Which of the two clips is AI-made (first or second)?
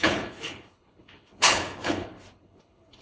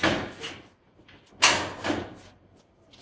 first